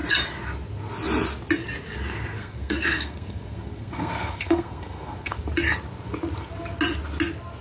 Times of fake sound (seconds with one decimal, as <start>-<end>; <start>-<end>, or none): 2.4-5.4